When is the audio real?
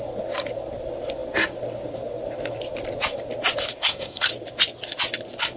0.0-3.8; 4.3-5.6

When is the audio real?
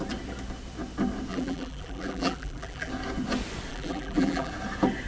0.0-1.3; 2.9-3.7; 4.5-5.1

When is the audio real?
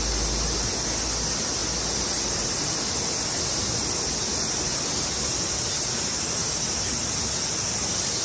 0.0-8.2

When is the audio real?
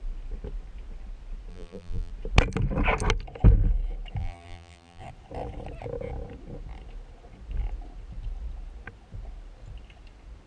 0.0-1.5; 2.1-4.2; 5.0-10.5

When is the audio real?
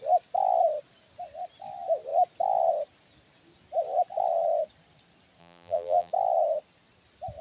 0.0-5.4; 6.1-7.4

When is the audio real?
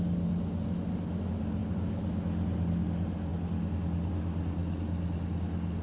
0.0-5.8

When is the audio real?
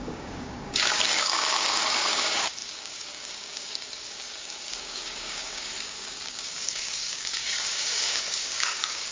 none